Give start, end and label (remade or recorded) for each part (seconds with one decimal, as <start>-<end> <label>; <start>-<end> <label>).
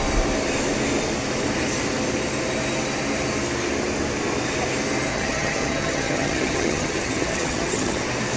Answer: 0.0-5.1 recorded; 5.1-8.0 remade; 8.0-8.4 recorded